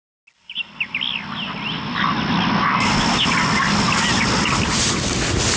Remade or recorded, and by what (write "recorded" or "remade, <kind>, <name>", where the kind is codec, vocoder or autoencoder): recorded